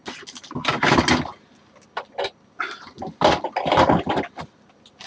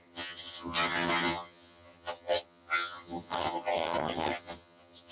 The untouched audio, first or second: first